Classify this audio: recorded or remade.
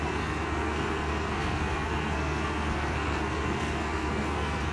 remade